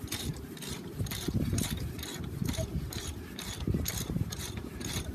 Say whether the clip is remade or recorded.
remade